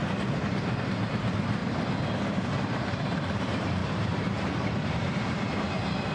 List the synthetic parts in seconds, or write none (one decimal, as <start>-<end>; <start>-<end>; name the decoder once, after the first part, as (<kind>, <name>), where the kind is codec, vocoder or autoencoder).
0.0-1.6 (vocoder, BigVGAN v2); 2.5-6.1